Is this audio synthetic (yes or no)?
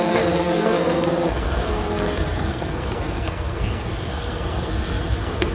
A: yes